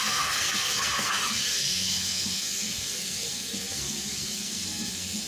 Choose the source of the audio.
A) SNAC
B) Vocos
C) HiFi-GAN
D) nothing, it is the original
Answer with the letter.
A